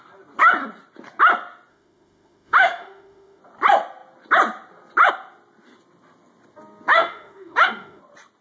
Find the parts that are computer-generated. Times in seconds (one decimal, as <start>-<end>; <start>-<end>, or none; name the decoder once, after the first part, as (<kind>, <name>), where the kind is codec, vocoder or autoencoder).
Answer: 1.7-3.4 (autoencoder, DAC-VAE); 6.9-8.0